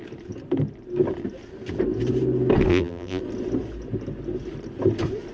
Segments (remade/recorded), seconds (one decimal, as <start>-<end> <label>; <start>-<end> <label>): 0.0-2.7 recorded; 2.7-3.2 remade; 3.2-5.3 recorded